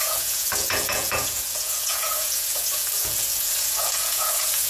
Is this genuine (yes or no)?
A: no